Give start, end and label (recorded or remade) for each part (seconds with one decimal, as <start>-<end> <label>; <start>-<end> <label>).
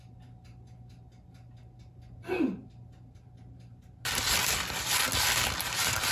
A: 0.0-6.1 recorded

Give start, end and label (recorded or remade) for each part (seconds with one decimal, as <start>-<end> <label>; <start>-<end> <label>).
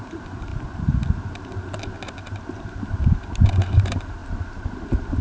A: 0.0-0.5 remade; 0.5-3.5 recorded; 3.5-4.2 remade; 4.2-5.2 recorded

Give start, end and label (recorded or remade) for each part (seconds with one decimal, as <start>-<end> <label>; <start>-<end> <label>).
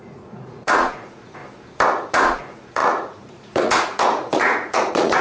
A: 0.0-1.4 remade; 1.4-2.1 recorded; 2.1-5.2 remade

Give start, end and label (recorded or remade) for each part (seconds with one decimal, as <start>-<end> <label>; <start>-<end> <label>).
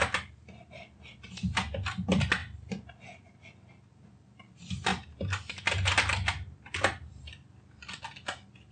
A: 0.0-8.7 recorded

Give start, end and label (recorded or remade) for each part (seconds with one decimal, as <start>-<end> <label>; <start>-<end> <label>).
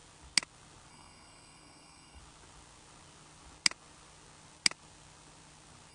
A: 0.0-0.9 recorded; 0.9-2.2 remade; 2.2-5.9 recorded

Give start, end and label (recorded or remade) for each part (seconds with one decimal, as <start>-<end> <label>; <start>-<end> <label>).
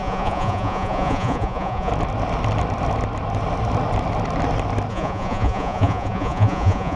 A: 0.0-1.9 remade; 1.9-4.9 recorded; 4.9-7.0 remade